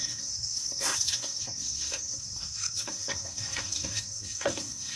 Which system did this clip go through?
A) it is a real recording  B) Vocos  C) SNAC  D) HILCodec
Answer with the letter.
C